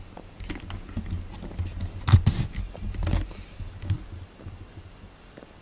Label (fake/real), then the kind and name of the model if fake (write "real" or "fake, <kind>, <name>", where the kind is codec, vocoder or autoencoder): real